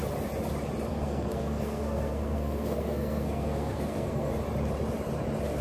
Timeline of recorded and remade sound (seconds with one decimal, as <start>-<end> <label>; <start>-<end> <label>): 0.0-0.9 recorded; 0.9-4.3 remade; 4.3-5.6 recorded